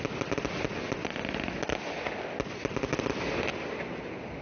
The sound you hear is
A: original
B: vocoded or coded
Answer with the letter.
A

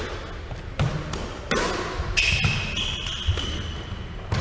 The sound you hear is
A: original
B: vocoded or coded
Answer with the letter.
A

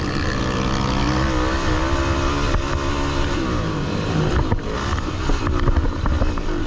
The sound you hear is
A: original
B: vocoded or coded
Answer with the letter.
A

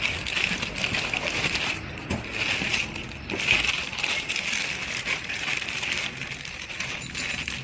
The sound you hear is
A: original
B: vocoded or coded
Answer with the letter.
A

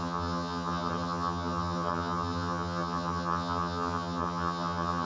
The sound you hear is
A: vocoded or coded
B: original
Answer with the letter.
A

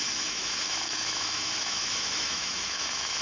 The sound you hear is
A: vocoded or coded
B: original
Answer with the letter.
A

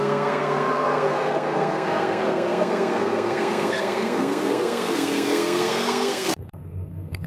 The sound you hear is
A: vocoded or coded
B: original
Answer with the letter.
A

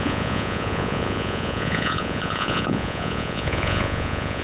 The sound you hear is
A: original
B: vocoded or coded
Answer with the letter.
B